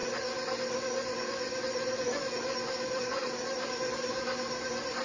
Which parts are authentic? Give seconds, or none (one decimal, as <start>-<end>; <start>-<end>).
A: 0.0-3.0